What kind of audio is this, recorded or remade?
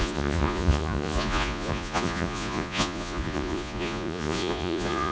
remade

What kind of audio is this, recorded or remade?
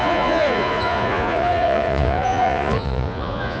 remade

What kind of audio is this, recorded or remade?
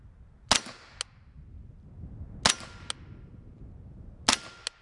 recorded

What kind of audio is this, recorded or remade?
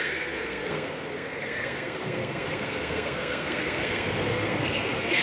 remade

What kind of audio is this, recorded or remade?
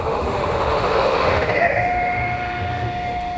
remade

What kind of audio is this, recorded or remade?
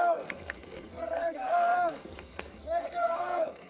remade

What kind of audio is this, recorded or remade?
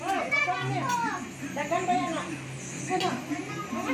recorded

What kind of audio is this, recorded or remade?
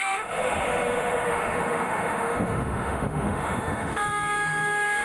remade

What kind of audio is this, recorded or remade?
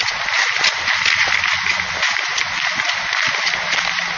recorded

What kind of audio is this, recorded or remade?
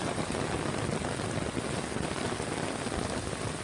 recorded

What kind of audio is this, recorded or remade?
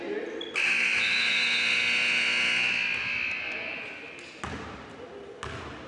recorded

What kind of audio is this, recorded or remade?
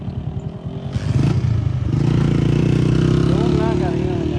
recorded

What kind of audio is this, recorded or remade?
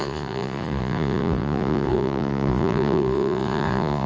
remade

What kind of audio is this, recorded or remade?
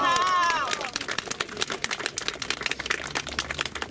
recorded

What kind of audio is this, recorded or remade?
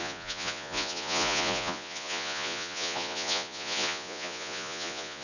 remade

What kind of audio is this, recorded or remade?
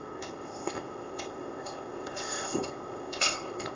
remade